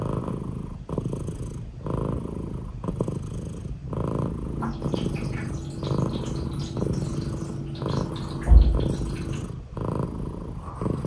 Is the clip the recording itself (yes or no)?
yes